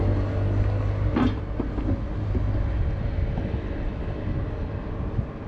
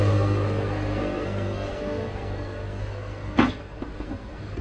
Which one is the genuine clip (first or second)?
first